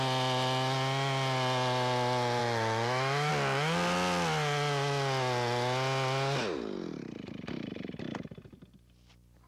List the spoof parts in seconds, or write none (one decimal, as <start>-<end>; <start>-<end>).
2.4-3.3